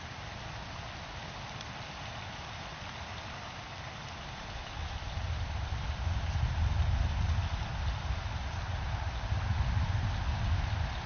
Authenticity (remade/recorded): recorded